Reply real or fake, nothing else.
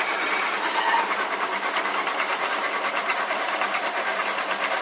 fake